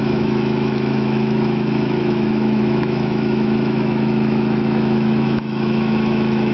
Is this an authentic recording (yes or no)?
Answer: no